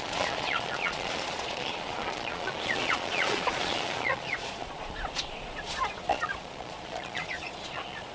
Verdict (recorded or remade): remade